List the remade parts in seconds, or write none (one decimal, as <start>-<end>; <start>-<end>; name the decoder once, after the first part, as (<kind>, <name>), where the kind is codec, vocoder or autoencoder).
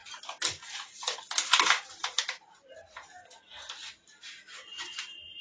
none